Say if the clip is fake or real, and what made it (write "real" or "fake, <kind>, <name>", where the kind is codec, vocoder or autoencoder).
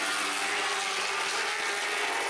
real